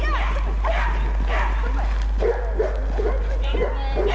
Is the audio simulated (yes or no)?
no